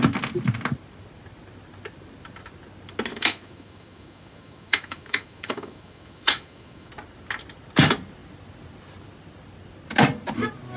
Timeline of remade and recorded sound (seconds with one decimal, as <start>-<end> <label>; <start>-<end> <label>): 0.0-3.1 recorded; 3.1-6.9 remade; 6.9-10.8 recorded